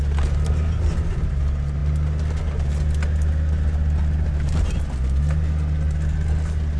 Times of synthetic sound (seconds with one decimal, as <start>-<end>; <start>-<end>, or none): none